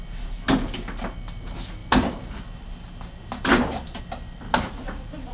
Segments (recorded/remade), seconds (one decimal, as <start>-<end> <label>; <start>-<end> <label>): 0.0-1.8 recorded; 1.8-4.0 remade; 4.0-5.3 recorded